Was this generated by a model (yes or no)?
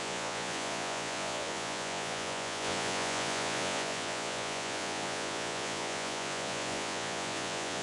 yes